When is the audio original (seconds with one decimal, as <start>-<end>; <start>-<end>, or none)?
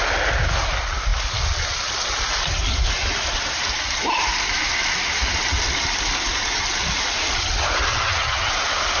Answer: 0.0-7.9; 8.5-9.0